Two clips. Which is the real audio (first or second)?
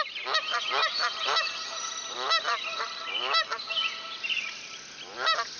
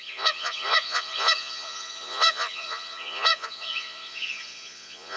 first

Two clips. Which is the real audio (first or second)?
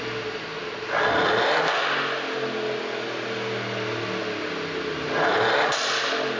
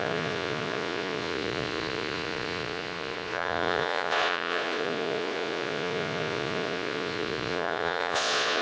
first